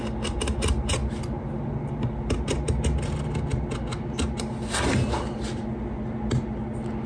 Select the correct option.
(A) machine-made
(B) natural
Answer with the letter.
B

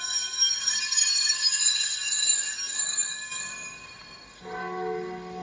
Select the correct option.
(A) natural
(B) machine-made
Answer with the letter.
B